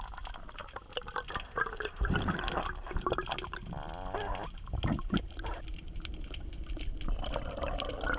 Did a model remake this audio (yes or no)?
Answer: no